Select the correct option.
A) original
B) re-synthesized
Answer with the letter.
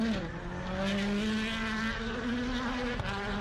A